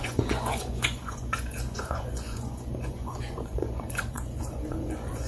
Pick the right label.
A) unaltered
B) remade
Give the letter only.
B